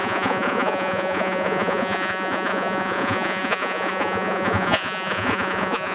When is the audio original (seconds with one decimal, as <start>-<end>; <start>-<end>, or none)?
none